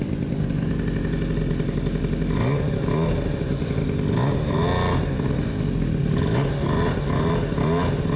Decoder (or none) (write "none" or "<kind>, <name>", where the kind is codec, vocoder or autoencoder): none